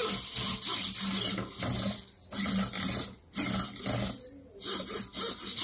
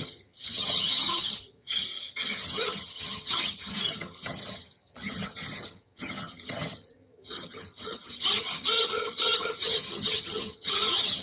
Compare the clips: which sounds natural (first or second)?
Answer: first